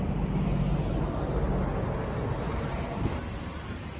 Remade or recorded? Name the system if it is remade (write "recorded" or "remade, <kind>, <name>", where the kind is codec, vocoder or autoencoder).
recorded